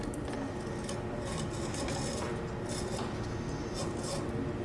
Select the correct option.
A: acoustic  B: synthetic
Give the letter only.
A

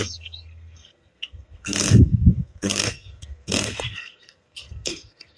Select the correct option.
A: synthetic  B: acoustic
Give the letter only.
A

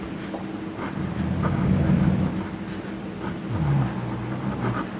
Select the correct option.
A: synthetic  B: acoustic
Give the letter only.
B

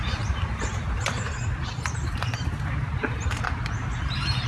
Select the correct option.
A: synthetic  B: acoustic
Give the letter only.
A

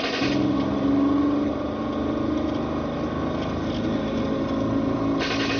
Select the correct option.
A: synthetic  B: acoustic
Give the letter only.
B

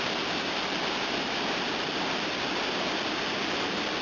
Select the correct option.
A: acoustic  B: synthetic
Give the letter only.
A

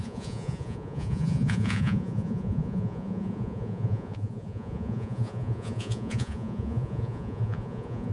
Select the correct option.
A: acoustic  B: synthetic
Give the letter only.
B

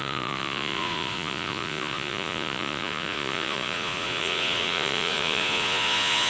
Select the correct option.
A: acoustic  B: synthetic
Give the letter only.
B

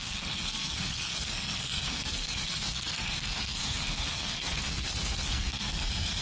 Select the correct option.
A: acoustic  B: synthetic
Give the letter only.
B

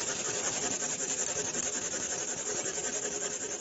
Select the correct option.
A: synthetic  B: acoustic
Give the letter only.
B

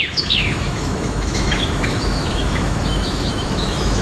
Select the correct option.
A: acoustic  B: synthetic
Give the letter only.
B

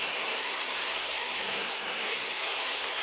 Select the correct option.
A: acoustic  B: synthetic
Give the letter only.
B